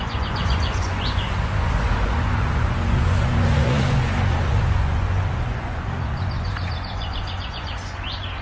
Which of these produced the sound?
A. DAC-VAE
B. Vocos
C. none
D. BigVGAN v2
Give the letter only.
B